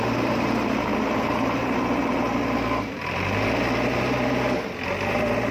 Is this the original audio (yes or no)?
yes